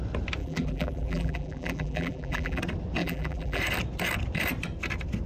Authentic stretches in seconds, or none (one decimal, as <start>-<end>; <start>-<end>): 0.0-0.4; 2.6-3.0; 3.6-5.3